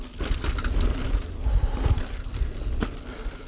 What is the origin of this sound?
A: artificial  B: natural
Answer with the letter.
B